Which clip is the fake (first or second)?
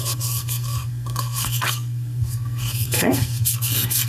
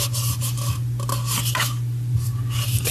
first